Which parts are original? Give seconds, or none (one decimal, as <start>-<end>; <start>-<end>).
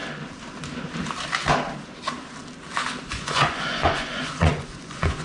0.0-3.1